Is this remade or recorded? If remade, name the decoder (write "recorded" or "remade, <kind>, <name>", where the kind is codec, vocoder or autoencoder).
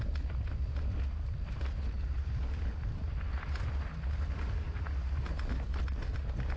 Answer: recorded